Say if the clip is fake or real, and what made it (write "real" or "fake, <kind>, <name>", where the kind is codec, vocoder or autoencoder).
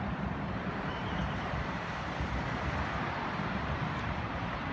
fake, vocoder, BigVGAN v2